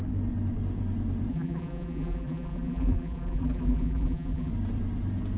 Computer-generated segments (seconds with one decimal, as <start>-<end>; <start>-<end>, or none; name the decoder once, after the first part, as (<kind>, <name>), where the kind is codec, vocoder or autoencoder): 1.3-4.5 (vocoder, BigVGAN v2)